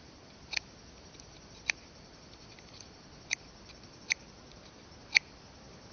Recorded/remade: recorded